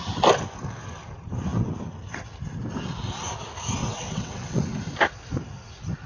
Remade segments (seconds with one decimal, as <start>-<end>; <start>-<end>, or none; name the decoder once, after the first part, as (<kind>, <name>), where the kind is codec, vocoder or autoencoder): 3.8-4.8 (vocoder, WaveNeXt)